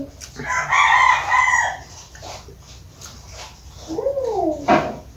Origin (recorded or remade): recorded